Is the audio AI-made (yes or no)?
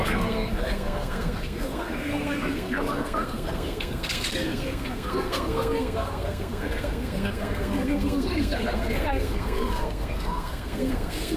yes